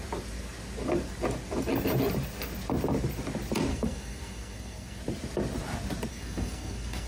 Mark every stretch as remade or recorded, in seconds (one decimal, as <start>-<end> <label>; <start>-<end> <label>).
0.0-3.7 recorded; 3.7-5.0 remade; 5.0-6.1 recorded; 6.1-7.1 remade